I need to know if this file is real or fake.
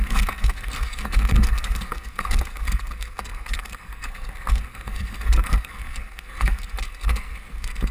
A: fake